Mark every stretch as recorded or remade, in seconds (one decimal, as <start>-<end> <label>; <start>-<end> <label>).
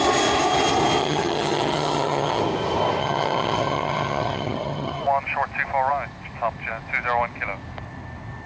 0.0-1.0 recorded; 1.0-2.4 remade; 2.4-3.0 recorded; 3.0-5.0 remade; 5.0-8.5 recorded